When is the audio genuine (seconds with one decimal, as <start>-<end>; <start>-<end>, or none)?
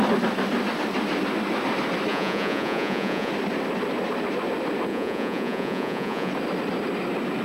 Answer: 0.0-2.1; 3.3-4.9; 6.3-7.4